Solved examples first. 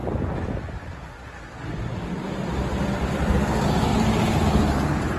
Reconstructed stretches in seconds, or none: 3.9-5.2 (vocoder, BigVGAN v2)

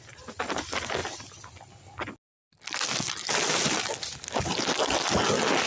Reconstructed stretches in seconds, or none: none